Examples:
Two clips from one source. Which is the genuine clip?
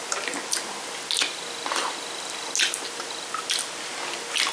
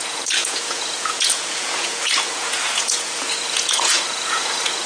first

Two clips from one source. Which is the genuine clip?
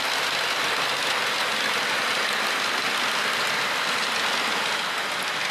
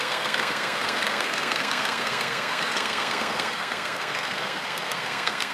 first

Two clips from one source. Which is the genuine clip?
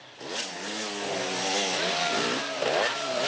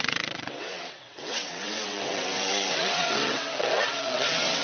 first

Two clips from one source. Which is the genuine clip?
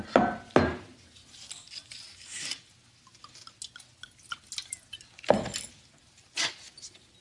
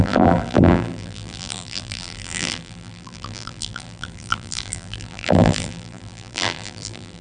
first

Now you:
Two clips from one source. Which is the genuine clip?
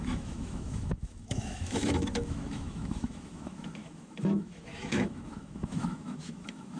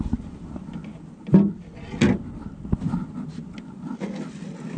second